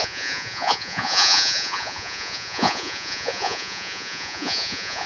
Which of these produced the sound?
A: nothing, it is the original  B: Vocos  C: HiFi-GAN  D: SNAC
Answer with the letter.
B